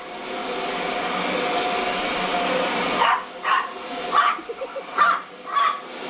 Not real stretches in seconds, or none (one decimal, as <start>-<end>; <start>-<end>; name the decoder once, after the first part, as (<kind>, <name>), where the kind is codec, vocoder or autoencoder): none